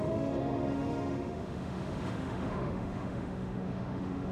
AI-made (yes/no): yes